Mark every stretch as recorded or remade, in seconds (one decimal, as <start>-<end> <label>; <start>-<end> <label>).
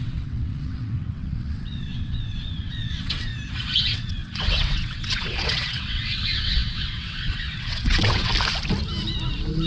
0.0-3.3 remade; 3.3-3.8 recorded; 3.8-8.3 remade; 8.3-9.7 recorded